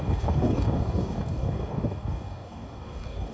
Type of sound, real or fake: fake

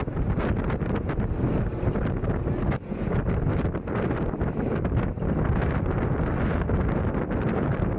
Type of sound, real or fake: real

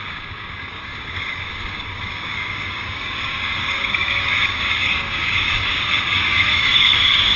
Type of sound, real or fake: fake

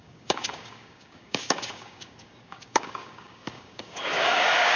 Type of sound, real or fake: fake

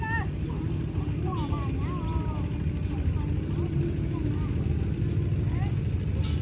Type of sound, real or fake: real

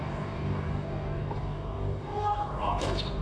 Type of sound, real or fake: fake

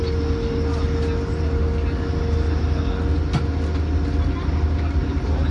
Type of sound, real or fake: real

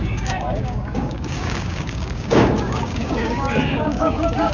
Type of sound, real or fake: fake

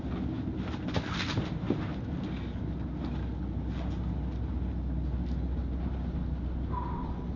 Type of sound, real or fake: real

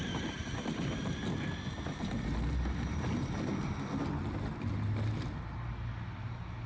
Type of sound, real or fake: real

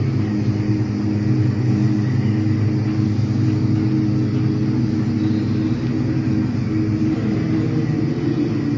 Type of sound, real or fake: real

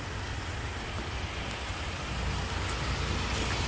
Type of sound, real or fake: real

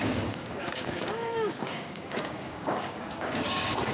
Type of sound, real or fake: fake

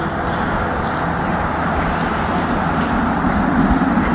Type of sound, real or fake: real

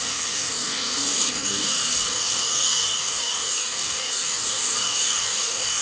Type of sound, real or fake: fake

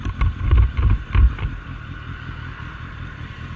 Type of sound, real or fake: real